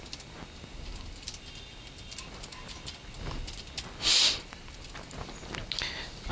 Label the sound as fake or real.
real